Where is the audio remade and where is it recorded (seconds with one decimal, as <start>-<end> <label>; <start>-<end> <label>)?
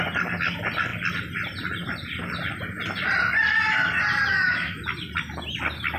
0.0-4.3 recorded; 4.3-4.8 remade; 4.8-6.0 recorded